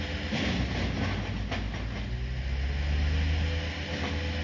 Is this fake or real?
real